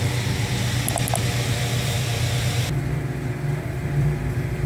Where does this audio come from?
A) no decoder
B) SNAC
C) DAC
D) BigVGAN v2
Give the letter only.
D